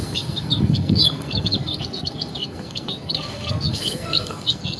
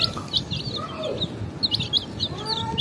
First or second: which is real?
second